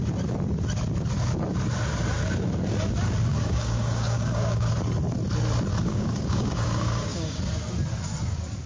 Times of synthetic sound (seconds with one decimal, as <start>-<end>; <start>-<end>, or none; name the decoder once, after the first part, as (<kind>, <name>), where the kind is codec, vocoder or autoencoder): 3.3-4.7 (codec, DAC); 5.7-7.4